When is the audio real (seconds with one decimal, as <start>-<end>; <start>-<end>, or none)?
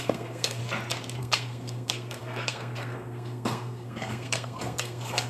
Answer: 0.6-1.2